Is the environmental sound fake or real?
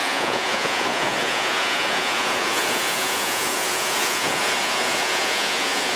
fake